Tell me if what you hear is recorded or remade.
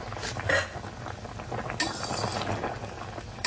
recorded